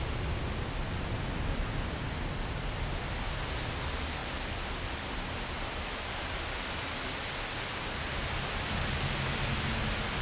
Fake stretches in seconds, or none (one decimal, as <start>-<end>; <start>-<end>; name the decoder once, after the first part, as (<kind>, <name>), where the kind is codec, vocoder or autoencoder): 4.2-6.2 (vocoder, BigVGAN v2)

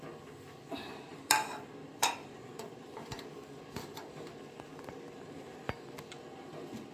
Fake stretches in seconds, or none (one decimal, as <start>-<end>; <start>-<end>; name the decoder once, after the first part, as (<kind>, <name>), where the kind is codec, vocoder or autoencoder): 1.1-3.6 (vocoder, BigVGAN v2); 4.7-5.6

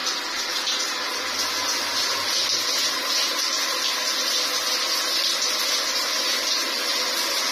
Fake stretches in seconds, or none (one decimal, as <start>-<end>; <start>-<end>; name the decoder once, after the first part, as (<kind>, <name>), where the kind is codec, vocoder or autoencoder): none

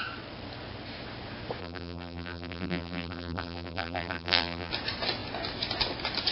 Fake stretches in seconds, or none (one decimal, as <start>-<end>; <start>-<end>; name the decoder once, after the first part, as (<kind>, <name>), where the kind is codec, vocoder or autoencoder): 1.6-4.7 (vocoder, BigVGAN v2)

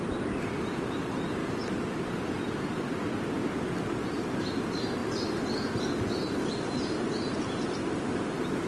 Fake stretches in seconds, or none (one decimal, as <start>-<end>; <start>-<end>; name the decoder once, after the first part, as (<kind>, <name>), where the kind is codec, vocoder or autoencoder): 1.4-3.3 (vocoder, BigVGAN v2); 5.0-5.8